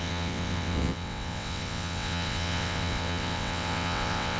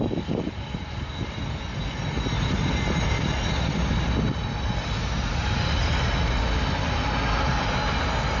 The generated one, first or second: first